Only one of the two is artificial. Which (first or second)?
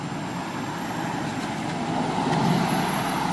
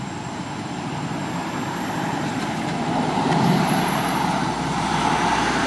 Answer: second